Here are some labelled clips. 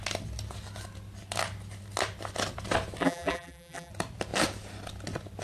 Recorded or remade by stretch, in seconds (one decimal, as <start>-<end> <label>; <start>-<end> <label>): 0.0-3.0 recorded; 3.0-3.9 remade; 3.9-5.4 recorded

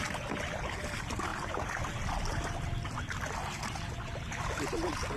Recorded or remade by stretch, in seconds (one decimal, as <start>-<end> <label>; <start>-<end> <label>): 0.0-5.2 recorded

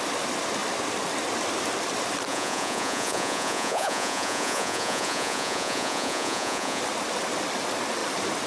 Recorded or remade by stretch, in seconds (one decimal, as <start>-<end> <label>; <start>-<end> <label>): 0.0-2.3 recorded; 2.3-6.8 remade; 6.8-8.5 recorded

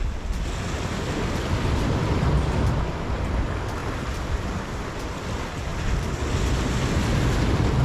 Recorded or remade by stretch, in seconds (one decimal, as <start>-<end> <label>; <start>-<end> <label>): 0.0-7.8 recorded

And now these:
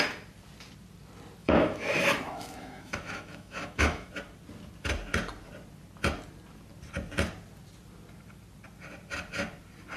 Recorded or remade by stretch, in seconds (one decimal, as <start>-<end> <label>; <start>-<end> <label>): 0.0-1.4 recorded; 1.4-4.1 remade; 4.1-10.0 recorded